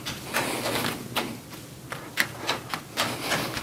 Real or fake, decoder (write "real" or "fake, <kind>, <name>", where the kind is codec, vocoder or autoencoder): real